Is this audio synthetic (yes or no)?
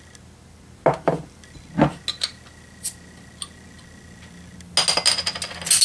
no